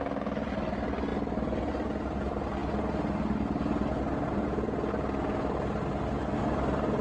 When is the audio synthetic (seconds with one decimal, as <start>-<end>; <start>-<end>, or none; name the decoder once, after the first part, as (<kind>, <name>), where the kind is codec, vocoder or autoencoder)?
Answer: none